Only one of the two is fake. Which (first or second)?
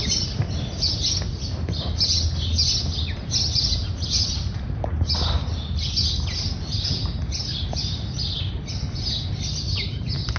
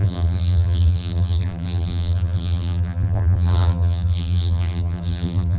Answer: second